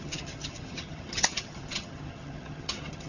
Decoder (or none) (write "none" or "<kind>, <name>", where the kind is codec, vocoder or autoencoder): vocoder, HiFi-GAN